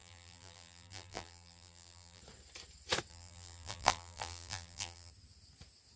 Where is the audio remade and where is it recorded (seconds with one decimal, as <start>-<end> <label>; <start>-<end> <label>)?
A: 0.0-2.2 remade; 2.2-3.1 recorded; 3.1-5.1 remade; 5.1-6.0 recorded